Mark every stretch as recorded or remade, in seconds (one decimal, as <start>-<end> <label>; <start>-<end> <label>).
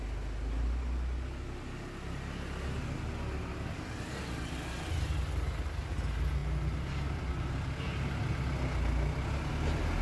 0.0-10.0 recorded